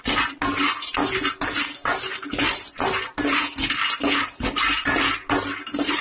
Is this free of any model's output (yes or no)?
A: yes